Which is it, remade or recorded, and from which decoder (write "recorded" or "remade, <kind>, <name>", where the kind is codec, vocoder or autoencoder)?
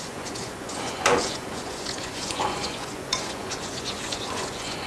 remade, vocoder, Vocos